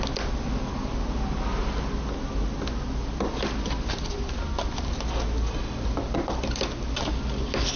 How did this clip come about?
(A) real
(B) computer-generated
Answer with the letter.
A